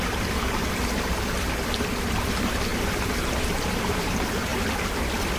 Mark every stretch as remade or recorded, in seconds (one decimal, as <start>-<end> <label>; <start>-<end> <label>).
0.0-5.4 recorded